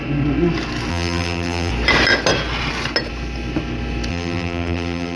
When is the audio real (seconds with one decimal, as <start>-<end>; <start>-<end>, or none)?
0.0-0.9; 1.7-4.1